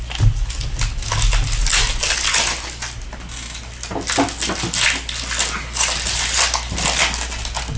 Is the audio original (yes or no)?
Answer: yes